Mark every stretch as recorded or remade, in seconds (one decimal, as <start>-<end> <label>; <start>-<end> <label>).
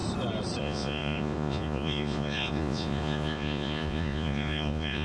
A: 0.0-0.6 recorded; 0.6-5.0 remade